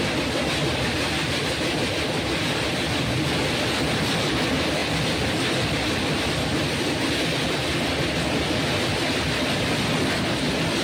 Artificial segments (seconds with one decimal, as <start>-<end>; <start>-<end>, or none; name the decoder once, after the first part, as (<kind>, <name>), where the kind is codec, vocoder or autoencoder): none